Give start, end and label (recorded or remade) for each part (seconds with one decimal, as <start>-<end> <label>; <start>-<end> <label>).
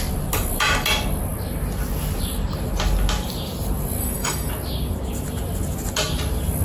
0.0-4.0 recorded; 4.0-4.5 remade; 4.5-6.6 recorded